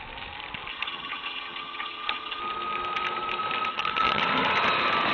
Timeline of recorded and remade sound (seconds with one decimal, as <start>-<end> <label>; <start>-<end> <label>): 0.0-0.7 recorded; 0.7-2.4 remade; 2.4-3.7 recorded; 3.7-4.2 remade; 4.2-5.1 recorded